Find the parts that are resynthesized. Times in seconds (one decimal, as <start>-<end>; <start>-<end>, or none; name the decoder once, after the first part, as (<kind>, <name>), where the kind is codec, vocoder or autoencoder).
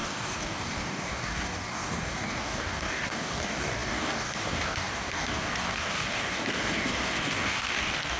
0.0-8.2 (codec, DAC)